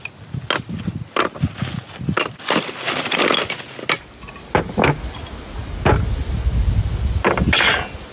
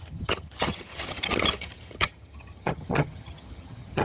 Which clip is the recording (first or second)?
first